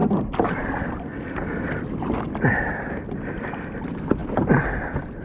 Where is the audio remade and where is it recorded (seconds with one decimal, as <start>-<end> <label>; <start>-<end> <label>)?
0.0-5.2 recorded